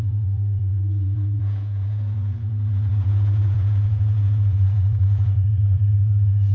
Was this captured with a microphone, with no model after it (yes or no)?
no